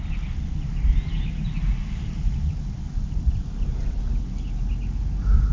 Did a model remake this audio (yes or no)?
no